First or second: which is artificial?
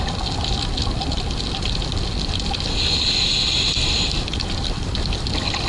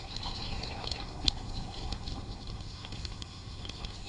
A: second